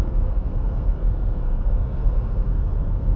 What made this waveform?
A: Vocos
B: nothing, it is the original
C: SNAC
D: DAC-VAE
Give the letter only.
C